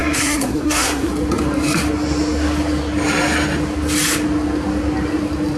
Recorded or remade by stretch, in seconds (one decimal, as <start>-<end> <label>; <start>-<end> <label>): 0.0-1.1 remade; 1.1-5.6 recorded

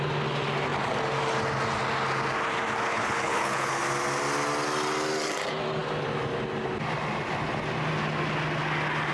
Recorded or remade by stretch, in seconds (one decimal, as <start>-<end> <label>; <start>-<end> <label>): 0.0-2.9 recorded; 2.9-3.8 remade; 3.8-9.1 recorded

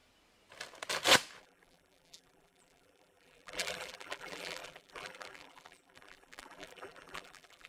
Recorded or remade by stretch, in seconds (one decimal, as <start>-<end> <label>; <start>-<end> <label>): 0.0-1.4 recorded; 1.4-7.7 remade

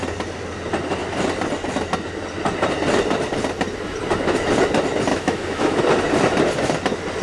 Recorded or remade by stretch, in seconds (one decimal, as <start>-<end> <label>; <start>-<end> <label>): 0.0-5.1 recorded; 5.1-5.8 remade; 5.8-7.2 recorded